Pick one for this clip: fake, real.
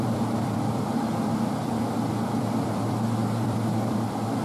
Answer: fake